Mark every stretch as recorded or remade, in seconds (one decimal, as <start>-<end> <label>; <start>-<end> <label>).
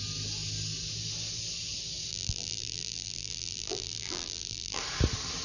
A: 0.0-2.1 recorded; 2.1-4.8 remade; 4.8-5.4 recorded